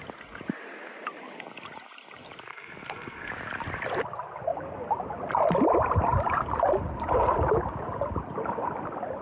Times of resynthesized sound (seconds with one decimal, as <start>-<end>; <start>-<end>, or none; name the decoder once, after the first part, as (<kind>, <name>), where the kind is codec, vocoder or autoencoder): 2.5-3.3 (codec, SNAC)